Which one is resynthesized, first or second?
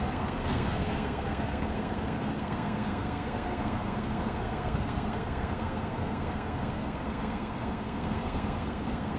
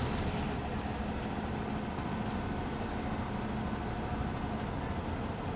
first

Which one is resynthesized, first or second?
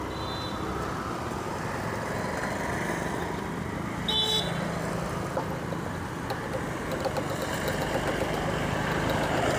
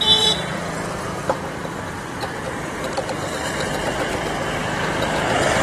second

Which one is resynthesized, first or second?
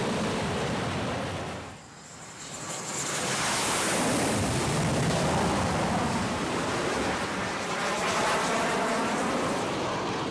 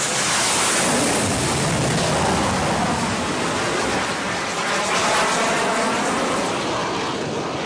first